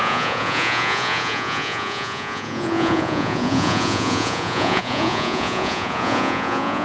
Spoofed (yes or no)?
yes